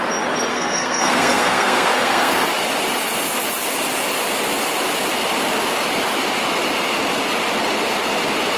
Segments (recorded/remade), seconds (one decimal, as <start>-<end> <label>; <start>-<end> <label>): 0.0-0.5 recorded; 0.5-2.3 remade; 2.3-8.6 recorded